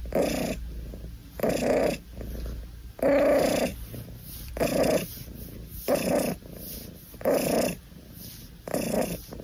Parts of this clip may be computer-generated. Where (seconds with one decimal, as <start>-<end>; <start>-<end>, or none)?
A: 3.7-4.5

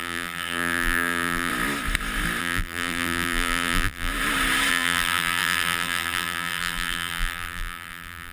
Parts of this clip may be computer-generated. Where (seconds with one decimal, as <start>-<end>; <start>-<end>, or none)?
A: 0.0-1.5; 2.4-4.1; 4.7-8.3

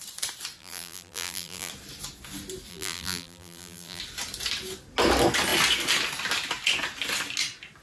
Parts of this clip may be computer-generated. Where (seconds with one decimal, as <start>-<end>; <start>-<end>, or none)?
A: 0.6-1.7; 2.7-4.0

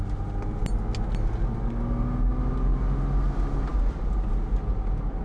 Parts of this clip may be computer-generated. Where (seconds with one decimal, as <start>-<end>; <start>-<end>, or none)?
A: none